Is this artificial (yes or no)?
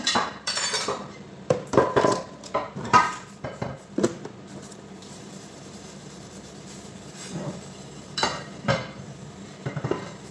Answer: yes